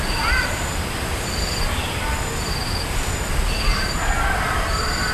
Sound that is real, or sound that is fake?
real